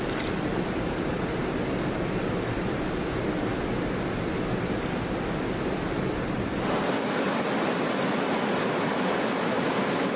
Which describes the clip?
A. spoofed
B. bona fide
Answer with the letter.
B